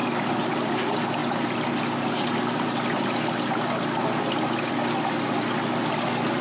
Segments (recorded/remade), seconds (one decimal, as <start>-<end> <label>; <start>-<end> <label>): 0.0-6.4 recorded